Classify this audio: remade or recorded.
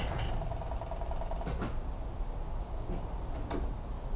recorded